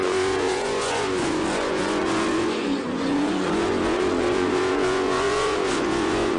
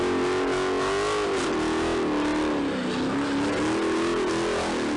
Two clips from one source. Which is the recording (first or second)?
second